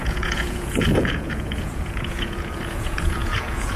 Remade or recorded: remade